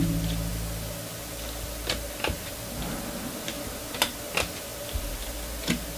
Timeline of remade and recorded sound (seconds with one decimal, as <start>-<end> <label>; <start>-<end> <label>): 0.0-6.0 recorded